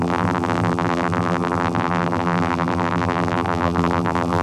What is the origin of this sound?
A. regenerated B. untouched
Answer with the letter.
A